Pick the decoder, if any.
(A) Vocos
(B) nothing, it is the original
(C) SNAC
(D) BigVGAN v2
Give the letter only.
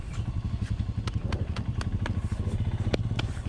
B